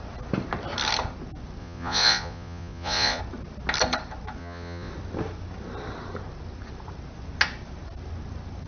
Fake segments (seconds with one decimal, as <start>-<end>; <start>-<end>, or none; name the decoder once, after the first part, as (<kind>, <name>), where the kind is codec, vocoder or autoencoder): 1.6-3.2 (vocoder, Vocos); 4.4-4.9

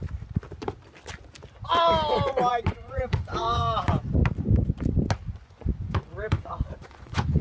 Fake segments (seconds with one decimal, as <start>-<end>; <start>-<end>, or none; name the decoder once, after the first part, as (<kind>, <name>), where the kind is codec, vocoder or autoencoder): 2.5-4.2 (vocoder, Vocos); 5.4-7.4

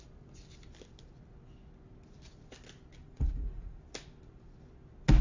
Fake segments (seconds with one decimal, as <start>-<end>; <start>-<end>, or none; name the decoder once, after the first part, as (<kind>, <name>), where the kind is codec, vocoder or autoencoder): 3.0-3.8 (vocoder, Vocos)

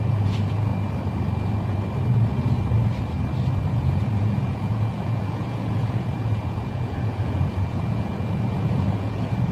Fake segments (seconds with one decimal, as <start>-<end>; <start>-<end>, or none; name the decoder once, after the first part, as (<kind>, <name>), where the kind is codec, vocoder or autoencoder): 0.0-0.7 (vocoder, Vocos); 3.7-9.5

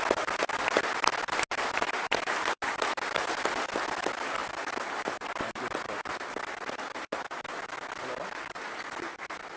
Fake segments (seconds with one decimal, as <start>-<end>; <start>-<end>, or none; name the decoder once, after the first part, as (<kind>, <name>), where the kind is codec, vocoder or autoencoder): none

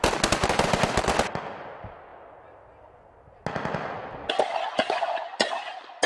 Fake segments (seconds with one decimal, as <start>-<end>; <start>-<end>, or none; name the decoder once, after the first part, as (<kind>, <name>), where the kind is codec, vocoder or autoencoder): 4.7-5.5 (vocoder, Vocos)

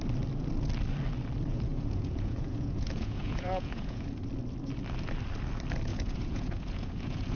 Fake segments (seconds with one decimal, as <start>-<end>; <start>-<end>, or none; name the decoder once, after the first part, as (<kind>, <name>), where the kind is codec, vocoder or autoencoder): 1.5-4.2 (vocoder, Vocos); 5.9-7.4

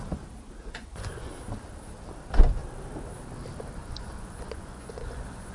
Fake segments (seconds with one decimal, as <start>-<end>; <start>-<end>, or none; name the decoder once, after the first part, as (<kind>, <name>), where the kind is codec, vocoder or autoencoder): 0.6-1.3 (vocoder, Vocos); 3.8-5.5